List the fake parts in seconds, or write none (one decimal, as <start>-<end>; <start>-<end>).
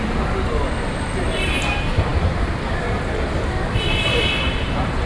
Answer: none